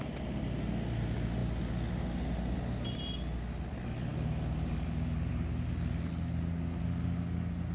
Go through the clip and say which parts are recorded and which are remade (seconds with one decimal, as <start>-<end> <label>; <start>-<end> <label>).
0.0-7.7 recorded